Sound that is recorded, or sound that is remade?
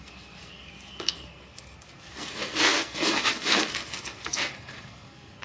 remade